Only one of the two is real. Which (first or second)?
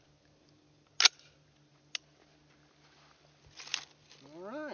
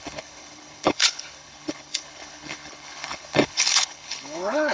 first